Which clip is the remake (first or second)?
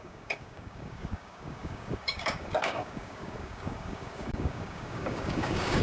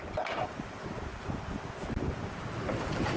first